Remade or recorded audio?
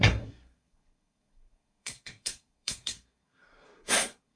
remade